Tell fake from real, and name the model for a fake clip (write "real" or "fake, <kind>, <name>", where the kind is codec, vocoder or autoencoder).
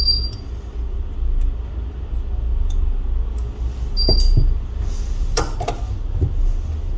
real